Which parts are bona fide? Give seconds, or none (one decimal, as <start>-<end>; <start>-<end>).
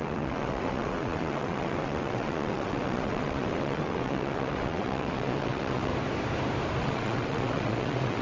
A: 5.9-6.8